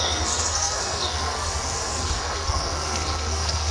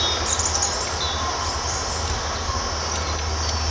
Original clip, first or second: second